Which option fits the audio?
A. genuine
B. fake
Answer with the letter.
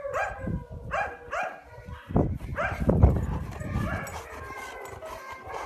A